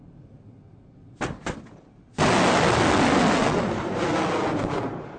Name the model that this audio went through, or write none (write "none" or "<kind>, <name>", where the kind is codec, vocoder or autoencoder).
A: none